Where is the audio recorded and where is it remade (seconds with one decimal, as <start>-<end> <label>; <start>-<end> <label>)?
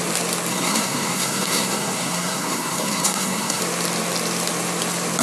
0.0-0.5 recorded; 0.5-3.6 remade; 3.6-5.2 recorded